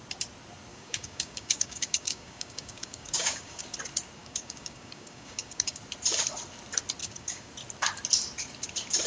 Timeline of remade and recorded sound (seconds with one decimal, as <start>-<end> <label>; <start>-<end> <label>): 0.0-0.7 recorded; 0.7-3.6 remade; 3.6-4.2 recorded; 4.2-5.8 remade; 5.8-7.0 recorded; 7.0-7.5 remade; 7.5-9.1 recorded